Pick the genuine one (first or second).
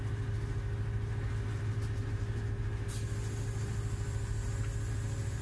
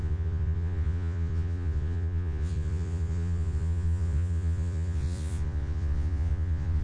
first